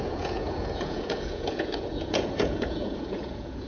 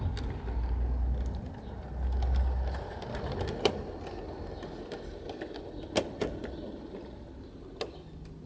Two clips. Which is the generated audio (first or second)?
first